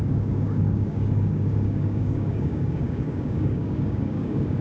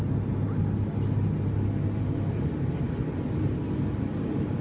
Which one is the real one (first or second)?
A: second